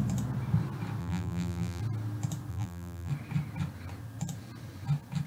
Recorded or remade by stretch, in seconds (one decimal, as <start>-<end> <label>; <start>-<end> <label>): 0.0-1.0 recorded; 1.0-1.8 remade; 1.8-2.5 recorded; 2.5-3.1 remade; 3.1-5.3 recorded